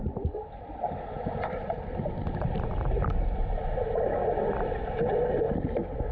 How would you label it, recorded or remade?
recorded